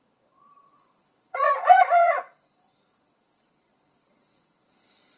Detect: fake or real fake